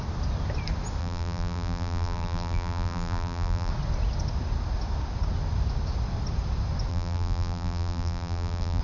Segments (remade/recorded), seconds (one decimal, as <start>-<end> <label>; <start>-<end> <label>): 0.0-1.0 recorded; 1.0-3.7 remade; 3.7-6.9 recorded; 6.9-8.8 remade